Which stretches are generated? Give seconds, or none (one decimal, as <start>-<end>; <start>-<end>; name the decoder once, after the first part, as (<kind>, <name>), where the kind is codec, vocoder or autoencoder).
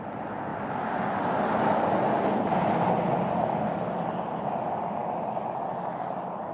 none